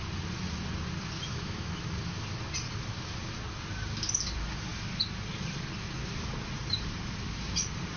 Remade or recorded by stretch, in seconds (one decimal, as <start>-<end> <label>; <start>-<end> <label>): 0.0-1.3 recorded; 1.3-1.9 remade; 1.9-8.0 recorded

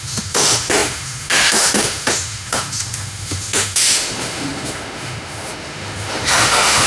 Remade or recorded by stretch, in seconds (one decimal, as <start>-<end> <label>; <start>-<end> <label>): 0.0-6.9 remade

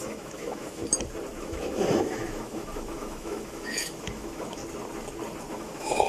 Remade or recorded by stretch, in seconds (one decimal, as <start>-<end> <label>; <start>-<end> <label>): 0.0-0.8 remade; 0.8-1.4 recorded; 1.4-4.6 remade; 4.6-5.5 recorded; 5.5-6.1 remade

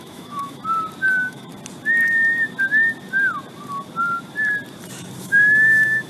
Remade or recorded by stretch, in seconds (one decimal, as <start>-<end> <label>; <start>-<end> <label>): 0.0-0.6 remade; 0.6-1.1 recorded; 1.1-1.5 remade; 1.5-5.2 recorded; 5.2-6.1 remade